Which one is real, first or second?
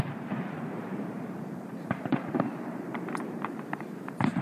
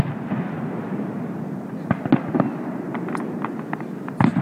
second